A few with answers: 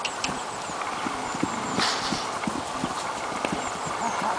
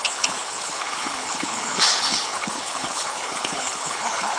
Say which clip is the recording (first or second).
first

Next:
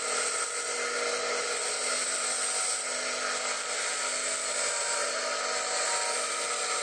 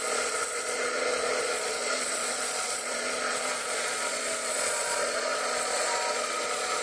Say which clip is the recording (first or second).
first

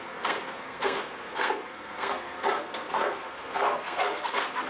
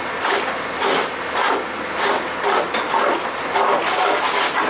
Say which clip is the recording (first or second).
second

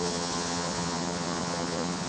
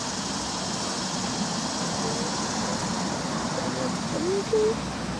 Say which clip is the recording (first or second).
second